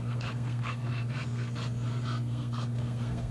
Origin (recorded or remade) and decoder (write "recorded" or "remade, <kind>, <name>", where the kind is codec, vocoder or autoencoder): remade, codec, SNAC